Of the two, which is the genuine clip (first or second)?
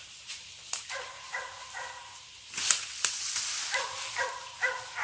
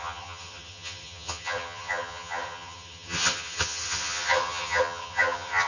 first